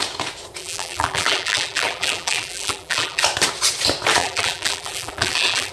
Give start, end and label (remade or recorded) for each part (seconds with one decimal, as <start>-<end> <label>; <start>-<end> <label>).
0.0-0.6 recorded; 0.6-3.2 remade; 3.2-4.2 recorded; 4.2-5.7 remade